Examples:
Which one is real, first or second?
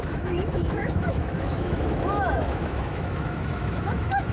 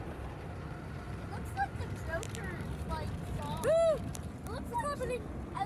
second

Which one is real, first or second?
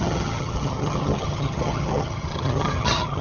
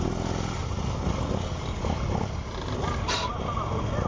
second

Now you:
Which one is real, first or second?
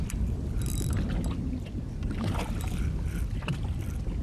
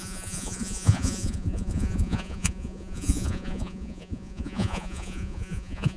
first